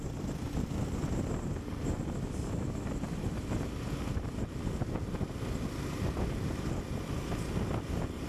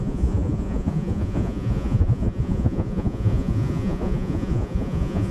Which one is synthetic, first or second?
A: second